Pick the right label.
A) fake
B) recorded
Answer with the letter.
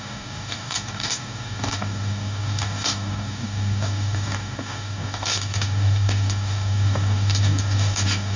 A